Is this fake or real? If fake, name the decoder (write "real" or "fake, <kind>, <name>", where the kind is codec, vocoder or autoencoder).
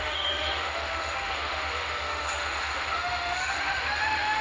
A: fake, autoencoder, DAC-VAE